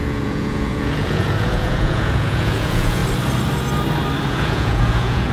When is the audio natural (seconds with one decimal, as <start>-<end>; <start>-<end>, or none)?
3.0-4.3